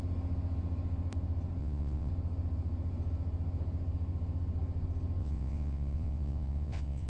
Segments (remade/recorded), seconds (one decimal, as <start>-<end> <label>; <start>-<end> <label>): 0.0-1.6 recorded; 1.6-2.1 remade; 2.1-5.2 recorded; 5.2-7.1 remade

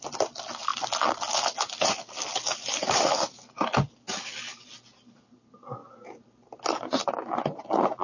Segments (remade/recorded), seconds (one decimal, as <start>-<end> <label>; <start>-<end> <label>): 0.0-5.8 recorded; 5.8-7.6 remade; 7.6-8.0 recorded

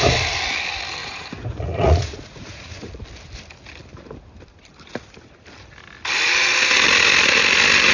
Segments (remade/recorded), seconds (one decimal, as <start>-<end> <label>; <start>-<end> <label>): 0.0-1.0 recorded; 1.0-2.9 remade; 2.9-7.9 recorded

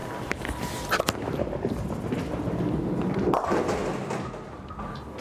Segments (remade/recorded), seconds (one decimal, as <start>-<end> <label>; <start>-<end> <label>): 0.0-5.2 recorded

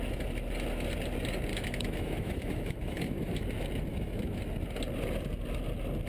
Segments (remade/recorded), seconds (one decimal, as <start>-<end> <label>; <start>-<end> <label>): 0.0-1.5 recorded; 1.5-3.4 remade; 3.4-3.9 recorded; 3.9-4.4 remade; 4.4-6.1 recorded

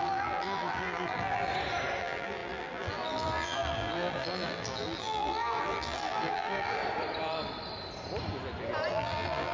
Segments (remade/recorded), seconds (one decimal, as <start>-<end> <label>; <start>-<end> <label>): 0.0-1.5 remade; 1.5-2.0 recorded; 2.0-6.8 remade; 6.8-8.9 recorded; 8.9-9.5 remade

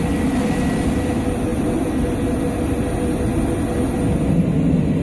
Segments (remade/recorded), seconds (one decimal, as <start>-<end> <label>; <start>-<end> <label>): 0.0-5.0 recorded